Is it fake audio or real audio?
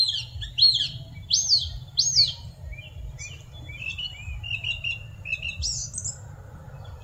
real